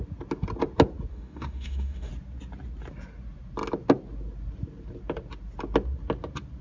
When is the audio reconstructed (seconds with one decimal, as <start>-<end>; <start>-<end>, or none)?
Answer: 1.1-2.1